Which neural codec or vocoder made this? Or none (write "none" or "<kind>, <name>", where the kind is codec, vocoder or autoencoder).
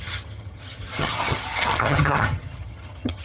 vocoder, HiFi-GAN